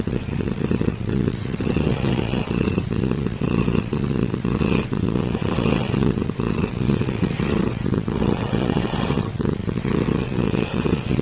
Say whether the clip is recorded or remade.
remade